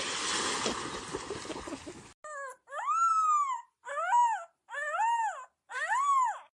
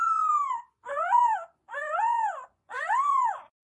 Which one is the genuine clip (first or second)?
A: first